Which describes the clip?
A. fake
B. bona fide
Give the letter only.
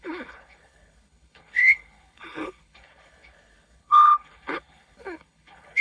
A